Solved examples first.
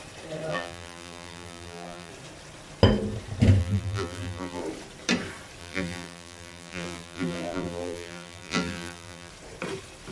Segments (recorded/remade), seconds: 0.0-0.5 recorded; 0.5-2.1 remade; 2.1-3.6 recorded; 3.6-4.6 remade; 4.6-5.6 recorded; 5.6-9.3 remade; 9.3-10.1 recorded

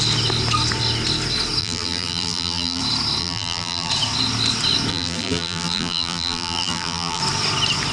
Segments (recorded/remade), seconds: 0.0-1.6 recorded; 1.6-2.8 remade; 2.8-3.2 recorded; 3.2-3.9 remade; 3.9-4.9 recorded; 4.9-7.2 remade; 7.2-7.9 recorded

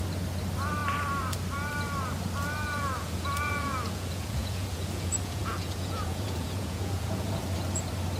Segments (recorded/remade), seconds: 0.0-2.6 recorded; 2.6-7.4 remade; 7.4-8.2 recorded

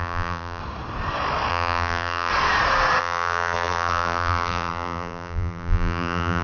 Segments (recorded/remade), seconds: 0.0-0.6 remade; 0.6-1.5 recorded; 1.5-2.3 remade; 2.3-3.0 recorded; 3.0-6.4 remade